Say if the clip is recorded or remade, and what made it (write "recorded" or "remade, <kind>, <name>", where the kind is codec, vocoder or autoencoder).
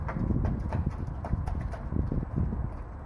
recorded